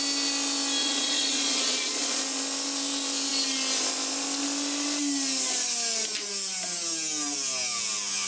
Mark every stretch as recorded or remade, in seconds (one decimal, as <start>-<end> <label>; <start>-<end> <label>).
0.0-0.8 recorded; 0.8-2.2 remade; 2.2-8.3 recorded